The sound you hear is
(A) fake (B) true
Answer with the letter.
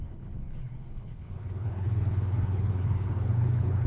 A